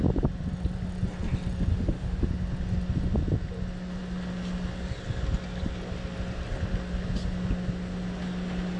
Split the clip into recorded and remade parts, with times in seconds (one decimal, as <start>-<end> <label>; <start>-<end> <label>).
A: 0.0-1.7 recorded; 1.7-2.3 remade; 2.3-8.8 recorded